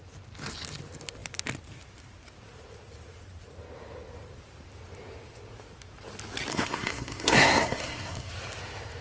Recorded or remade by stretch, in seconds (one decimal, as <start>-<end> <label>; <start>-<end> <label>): 0.0-6.5 recorded; 6.5-8.3 remade; 8.3-9.0 recorded